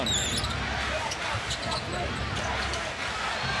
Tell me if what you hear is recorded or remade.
recorded